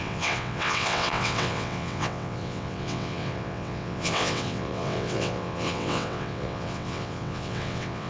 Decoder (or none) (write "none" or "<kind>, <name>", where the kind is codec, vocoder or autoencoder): vocoder, WaveNeXt